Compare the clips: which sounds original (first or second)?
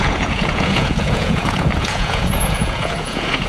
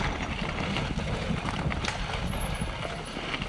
second